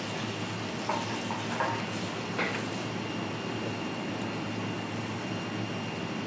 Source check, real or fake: real